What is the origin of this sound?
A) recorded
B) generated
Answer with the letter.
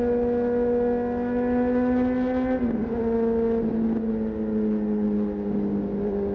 A